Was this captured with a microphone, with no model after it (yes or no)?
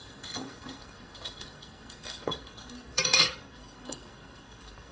no